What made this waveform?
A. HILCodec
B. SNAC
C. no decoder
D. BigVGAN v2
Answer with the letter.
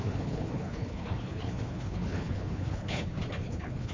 A